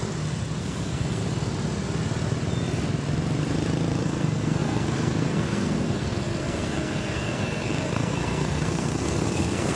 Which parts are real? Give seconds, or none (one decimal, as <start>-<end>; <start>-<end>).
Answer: 0.0-0.6; 1.2-4.0